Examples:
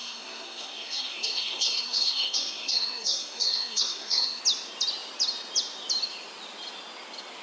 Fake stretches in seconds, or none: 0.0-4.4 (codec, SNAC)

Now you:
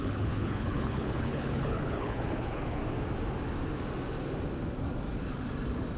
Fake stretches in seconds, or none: 0.0-2.8 (codec, HILCodec)

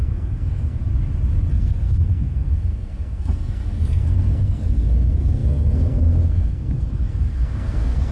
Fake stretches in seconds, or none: 0.0-0.8 (codec, SNAC); 1.5-8.1

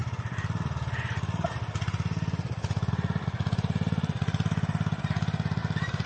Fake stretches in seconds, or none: none

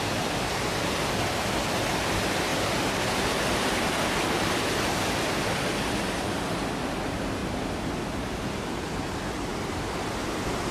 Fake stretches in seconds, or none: 2.5-4.6 (vocoder, BigVGAN v2)

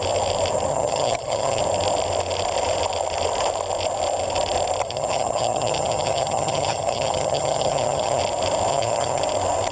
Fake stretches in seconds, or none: 0.7-1.6 (vocoder, HiFi-GAN); 4.8-8.2; 8.7-9.2

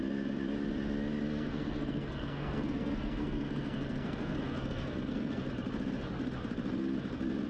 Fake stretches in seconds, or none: 1.3-5.5 (codec, SNAC)